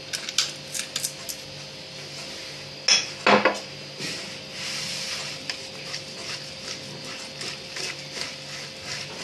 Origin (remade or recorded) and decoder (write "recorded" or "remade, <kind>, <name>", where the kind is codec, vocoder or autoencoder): recorded